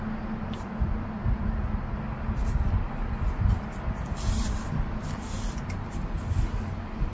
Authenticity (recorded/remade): recorded